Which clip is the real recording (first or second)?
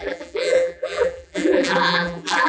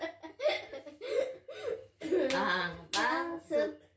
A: second